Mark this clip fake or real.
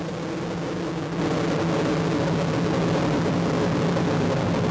real